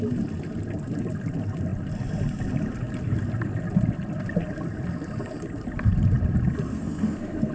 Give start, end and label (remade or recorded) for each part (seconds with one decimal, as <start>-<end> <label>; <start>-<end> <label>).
0.0-6.7 recorded; 6.7-7.5 remade